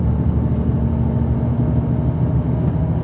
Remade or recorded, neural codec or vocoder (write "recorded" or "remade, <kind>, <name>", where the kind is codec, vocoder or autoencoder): recorded